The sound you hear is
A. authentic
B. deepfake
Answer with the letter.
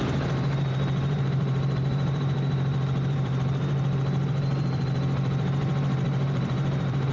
B